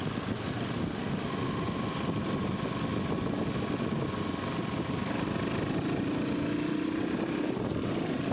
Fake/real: real